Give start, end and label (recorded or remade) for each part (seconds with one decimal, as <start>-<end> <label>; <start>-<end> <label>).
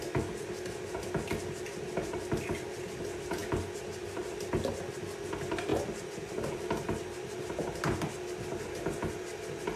0.0-9.8 recorded